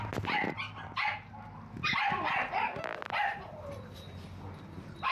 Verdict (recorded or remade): recorded